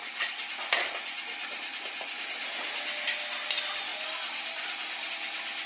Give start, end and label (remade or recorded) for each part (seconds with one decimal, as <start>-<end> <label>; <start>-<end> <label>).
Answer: 0.0-5.7 recorded

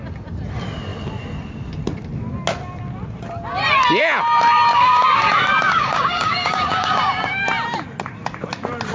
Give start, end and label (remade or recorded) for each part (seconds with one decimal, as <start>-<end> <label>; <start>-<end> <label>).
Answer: 0.0-4.7 recorded; 4.7-7.4 remade; 7.4-8.9 recorded

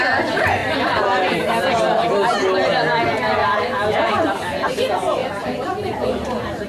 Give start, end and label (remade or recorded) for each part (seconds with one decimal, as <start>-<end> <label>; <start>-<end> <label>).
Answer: 0.0-0.6 recorded; 0.6-1.8 remade; 1.8-3.4 recorded; 3.4-4.6 remade; 4.6-5.2 recorded; 5.2-6.7 remade

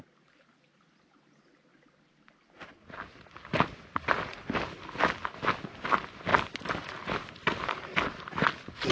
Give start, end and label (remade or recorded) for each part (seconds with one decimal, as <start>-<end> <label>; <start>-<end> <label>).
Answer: 0.0-1.7 recorded; 1.7-4.3 remade; 4.3-8.9 recorded

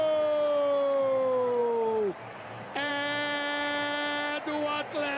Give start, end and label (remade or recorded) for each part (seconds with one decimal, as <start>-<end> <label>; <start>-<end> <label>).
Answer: 0.0-1.6 recorded; 1.6-2.9 remade; 2.9-5.2 recorded

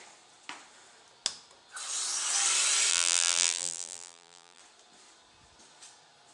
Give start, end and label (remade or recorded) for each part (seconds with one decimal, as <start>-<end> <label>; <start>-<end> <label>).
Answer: 0.0-2.9 recorded; 2.9-4.6 remade; 4.6-6.3 recorded